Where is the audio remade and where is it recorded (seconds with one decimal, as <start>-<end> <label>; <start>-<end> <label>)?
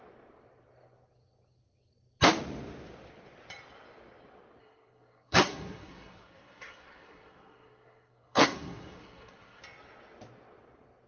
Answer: 0.0-4.6 recorded; 4.6-9.6 remade; 9.6-11.1 recorded